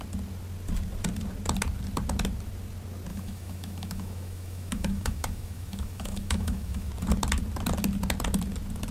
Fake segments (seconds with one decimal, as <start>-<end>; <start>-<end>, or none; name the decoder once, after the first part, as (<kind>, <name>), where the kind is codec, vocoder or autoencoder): 3.1-6.9 (autoencoder, DAC-VAE)